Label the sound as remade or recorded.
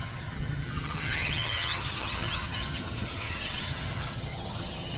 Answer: remade